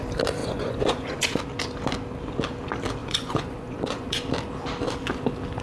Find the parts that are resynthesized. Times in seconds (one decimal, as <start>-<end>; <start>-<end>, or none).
0.4-1.4; 3.0-4.2